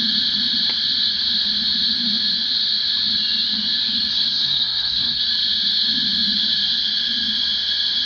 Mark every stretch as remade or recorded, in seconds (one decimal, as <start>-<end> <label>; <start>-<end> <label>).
0.0-4.1 recorded; 4.1-5.2 remade; 5.2-8.1 recorded